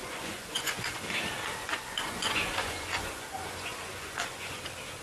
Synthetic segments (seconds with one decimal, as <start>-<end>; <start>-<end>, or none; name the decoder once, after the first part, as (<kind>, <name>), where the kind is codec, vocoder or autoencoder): 0.0-1.0 (vocoder, Vocos); 1.6-4.6